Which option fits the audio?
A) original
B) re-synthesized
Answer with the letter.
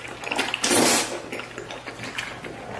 A